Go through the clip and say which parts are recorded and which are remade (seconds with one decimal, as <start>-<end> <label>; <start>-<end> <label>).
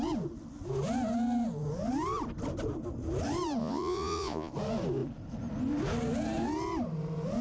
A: 0.0-3.6 recorded; 3.6-4.5 remade; 4.5-7.4 recorded